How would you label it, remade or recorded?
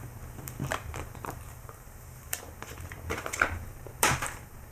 remade